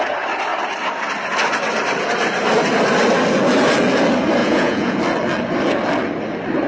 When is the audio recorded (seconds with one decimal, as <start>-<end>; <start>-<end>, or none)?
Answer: 0.0-4.4; 5.0-6.7

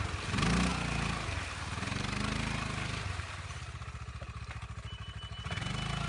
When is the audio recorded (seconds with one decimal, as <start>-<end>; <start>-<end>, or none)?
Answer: 0.0-6.1

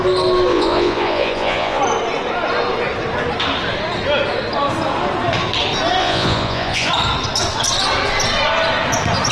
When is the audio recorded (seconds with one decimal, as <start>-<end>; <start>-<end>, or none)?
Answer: 0.0-0.5; 1.8-6.0; 6.9-9.3

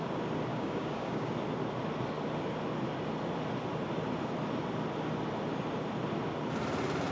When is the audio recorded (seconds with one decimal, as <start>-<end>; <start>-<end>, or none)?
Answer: 0.0-0.5; 1.3-7.1

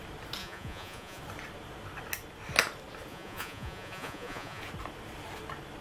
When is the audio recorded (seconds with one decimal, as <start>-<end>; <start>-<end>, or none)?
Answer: 0.0-0.4; 1.2-3.1; 4.6-5.8

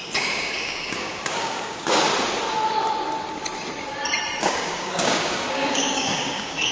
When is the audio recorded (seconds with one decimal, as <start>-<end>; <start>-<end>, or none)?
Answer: 2.1-4.4

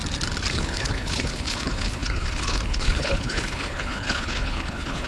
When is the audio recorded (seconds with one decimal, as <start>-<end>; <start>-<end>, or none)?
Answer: 0.0-0.5

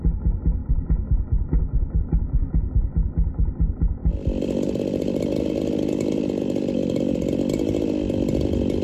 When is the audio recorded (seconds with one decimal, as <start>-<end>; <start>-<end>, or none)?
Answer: 0.0-4.0; 6.8-8.8